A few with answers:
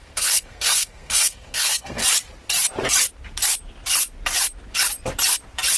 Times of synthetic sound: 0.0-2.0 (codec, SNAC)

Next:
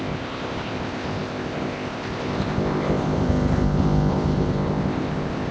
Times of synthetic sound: 0.0-5.5 (codec, ZipCodec)